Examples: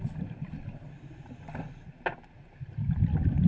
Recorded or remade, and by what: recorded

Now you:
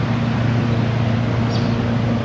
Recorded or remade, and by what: recorded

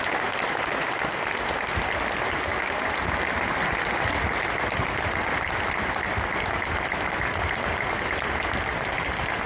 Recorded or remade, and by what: recorded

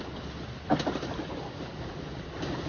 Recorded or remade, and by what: recorded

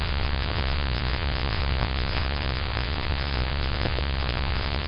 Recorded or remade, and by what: remade, vocoder, WaveNeXt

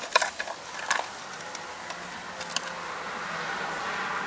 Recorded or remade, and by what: recorded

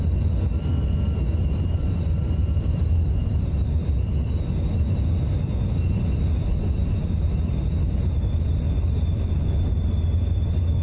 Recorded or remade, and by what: recorded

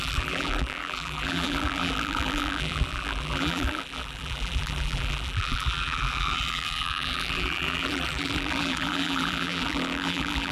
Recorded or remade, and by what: remade, vocoder, BigVGAN v2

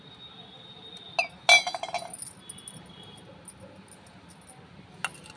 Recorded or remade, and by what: recorded